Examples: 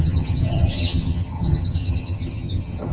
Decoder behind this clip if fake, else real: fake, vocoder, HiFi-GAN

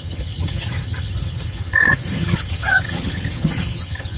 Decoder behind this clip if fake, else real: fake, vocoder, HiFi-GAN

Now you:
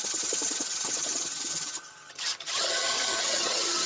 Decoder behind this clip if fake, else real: fake, vocoder, HiFi-GAN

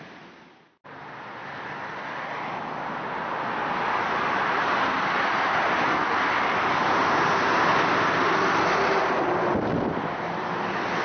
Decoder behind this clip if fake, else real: real